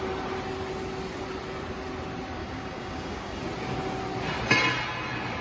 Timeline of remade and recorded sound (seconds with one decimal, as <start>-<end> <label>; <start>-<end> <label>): 0.0-2.4 recorded; 2.4-3.4 remade; 3.4-5.4 recorded